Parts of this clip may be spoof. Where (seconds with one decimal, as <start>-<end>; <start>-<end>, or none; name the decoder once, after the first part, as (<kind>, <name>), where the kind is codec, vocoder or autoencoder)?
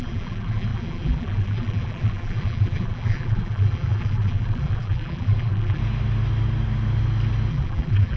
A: 0.0-5.8 (vocoder, BigVGAN v2); 7.5-8.2